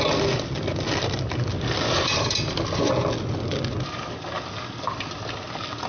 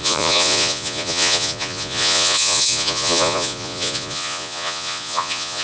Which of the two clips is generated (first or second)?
second